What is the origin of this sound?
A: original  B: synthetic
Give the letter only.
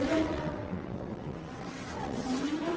B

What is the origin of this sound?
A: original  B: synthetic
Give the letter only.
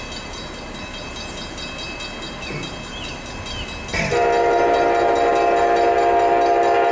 A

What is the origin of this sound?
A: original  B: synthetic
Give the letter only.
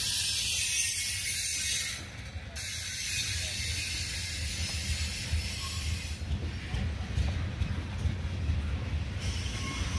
A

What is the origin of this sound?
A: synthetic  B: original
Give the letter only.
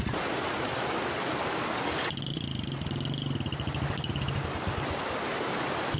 B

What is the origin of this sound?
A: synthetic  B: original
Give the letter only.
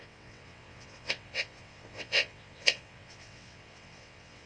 A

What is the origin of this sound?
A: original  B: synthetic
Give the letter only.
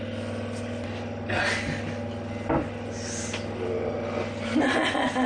A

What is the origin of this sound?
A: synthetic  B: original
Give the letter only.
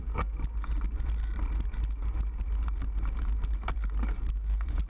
B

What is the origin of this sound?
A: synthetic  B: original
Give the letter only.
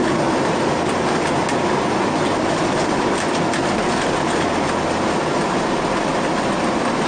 B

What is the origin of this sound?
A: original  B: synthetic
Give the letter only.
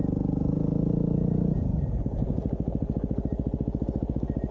A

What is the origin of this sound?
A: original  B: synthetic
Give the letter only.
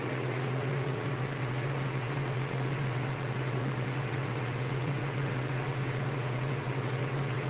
B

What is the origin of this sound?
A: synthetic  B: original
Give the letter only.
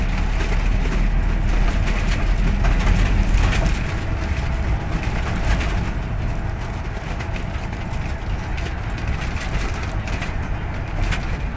B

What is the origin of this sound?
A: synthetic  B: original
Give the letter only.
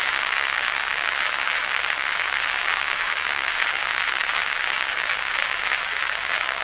A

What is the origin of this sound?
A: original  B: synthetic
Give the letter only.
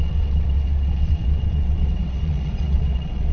B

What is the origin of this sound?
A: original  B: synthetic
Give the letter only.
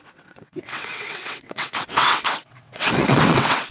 B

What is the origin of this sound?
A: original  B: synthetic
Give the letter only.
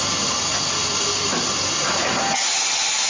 A